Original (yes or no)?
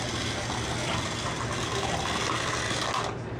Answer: yes